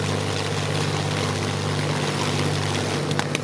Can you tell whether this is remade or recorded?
recorded